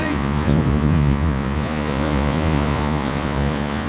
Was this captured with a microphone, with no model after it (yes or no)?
no